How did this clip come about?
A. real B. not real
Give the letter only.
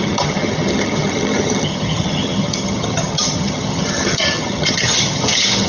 B